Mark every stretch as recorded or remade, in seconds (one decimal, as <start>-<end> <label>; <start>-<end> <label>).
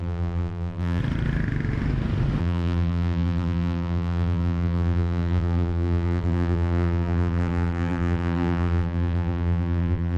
0.0-1.0 remade; 1.0-2.4 recorded; 2.4-10.2 remade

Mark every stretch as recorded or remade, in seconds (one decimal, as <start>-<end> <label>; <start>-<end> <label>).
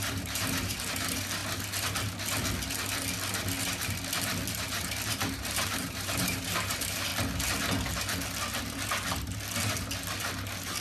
0.0-1.4 remade; 1.4-4.5 recorded; 4.5-7.1 remade; 7.1-10.2 recorded; 10.2-10.8 remade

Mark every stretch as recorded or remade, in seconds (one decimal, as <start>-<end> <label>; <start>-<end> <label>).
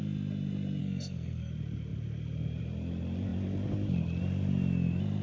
0.0-0.8 recorded; 0.8-1.5 remade; 1.5-5.2 recorded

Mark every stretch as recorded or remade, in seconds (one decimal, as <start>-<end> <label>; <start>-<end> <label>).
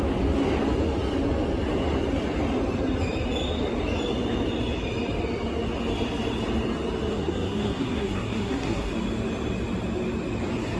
0.0-7.1 recorded; 7.1-8.9 remade; 8.9-10.8 recorded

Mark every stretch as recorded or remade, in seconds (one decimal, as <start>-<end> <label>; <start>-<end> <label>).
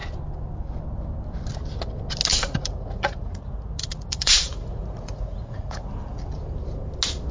0.0-2.3 recorded; 2.3-5.9 remade; 5.9-7.3 recorded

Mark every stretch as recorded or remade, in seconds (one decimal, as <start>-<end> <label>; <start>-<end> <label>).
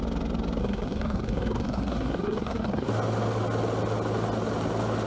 0.0-0.6 recorded; 0.6-2.9 remade; 2.9-5.1 recorded